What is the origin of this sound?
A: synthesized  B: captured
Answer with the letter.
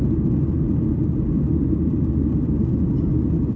B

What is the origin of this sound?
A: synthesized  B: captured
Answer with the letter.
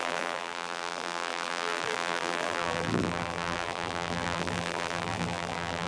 A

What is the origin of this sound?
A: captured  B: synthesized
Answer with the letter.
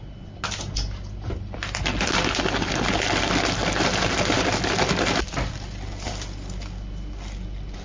A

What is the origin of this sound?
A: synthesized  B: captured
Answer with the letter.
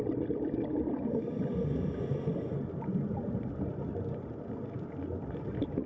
B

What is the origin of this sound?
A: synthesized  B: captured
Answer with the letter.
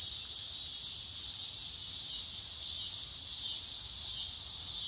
B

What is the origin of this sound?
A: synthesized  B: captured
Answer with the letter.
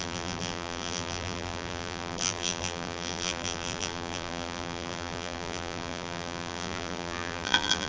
A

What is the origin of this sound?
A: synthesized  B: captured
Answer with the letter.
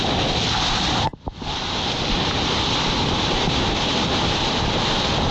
B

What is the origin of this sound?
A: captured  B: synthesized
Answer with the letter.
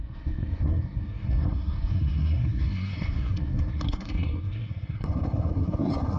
B